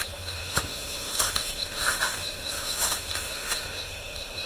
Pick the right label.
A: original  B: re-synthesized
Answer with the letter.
B